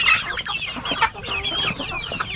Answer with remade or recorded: recorded